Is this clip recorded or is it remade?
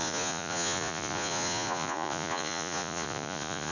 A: remade